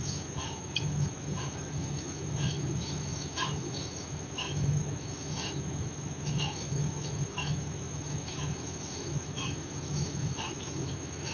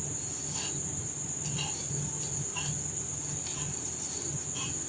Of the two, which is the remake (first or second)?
first